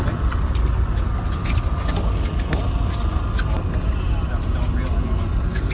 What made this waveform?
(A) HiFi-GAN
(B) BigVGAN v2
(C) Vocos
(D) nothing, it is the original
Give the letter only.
D